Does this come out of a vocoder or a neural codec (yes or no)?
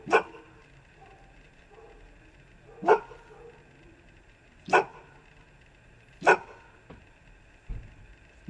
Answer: no